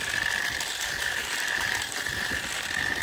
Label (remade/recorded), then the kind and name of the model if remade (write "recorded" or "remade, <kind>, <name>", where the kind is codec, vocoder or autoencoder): remade, vocoder, BigVGAN v2